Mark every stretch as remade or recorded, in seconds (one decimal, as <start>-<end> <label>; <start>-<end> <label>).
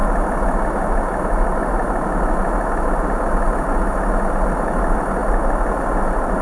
0.0-6.4 recorded